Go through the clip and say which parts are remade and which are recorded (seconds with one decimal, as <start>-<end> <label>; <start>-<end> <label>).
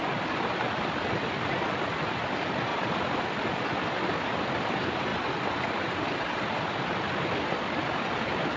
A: 0.0-5.1 remade; 5.1-7.6 recorded; 7.6-8.6 remade